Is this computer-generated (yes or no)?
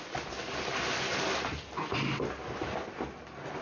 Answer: no